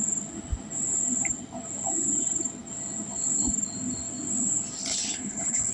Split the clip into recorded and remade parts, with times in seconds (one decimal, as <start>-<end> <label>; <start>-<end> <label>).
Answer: 0.0-4.9 recorded; 4.9-5.7 remade